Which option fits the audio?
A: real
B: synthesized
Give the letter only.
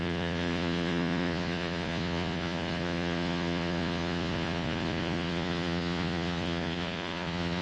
B